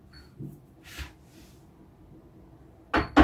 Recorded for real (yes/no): yes